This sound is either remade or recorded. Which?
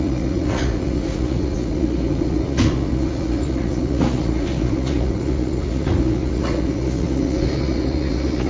remade